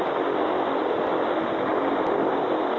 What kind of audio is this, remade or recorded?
recorded